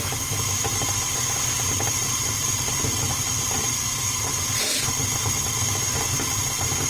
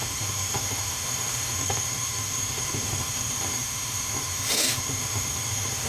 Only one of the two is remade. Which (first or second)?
second